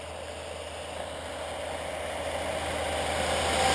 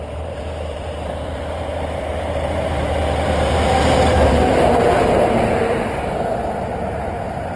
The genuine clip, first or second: first